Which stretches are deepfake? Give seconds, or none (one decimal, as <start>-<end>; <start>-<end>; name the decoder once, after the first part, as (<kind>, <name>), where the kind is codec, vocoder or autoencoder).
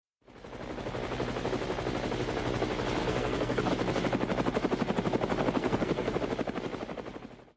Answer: 3.0-3.7 (codec, SNAC); 5.6-6.2